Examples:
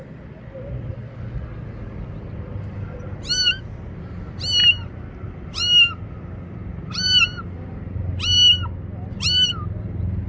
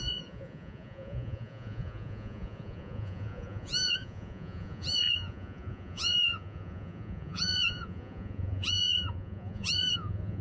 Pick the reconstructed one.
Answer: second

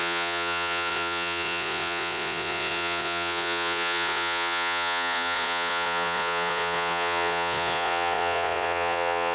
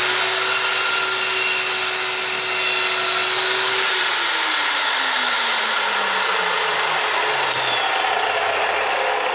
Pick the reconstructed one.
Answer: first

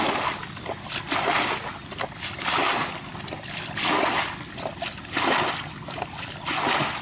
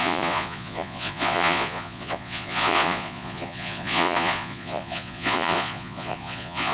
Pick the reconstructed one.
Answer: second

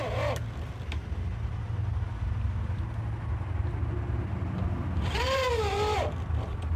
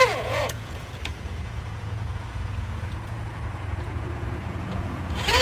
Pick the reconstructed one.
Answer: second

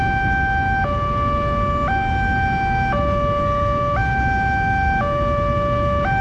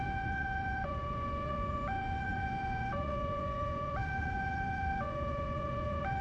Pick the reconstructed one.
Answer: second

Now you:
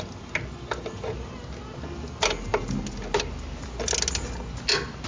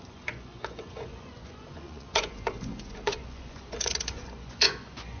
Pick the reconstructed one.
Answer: second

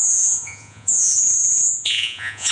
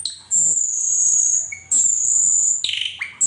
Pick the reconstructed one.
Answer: first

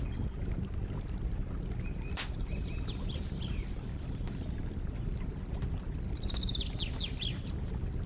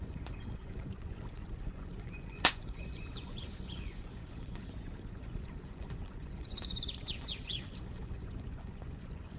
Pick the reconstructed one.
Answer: second